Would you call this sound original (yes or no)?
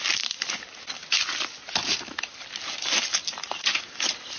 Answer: yes